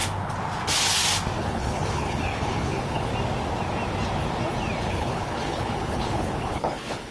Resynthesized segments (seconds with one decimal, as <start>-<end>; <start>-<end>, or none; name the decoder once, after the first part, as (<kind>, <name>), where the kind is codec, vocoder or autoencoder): 1.4-3.1 (codec, HILCodec); 4.9-7.1